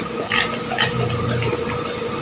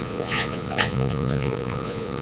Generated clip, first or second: second